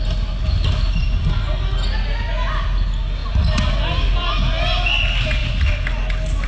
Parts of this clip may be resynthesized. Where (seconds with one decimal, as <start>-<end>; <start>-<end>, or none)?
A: none

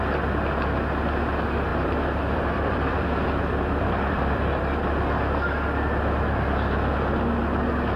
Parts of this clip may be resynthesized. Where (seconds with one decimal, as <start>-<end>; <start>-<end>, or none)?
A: 1.7-5.1

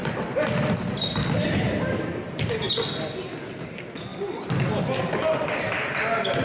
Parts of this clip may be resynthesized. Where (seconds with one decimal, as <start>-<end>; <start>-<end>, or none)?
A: none

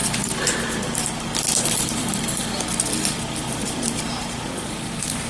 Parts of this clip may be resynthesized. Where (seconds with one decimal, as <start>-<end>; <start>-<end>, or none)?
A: 3.6-5.3

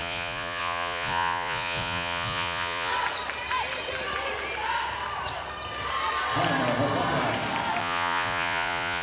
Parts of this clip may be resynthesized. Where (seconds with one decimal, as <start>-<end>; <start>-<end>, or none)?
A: 0.0-2.9; 7.8-9.0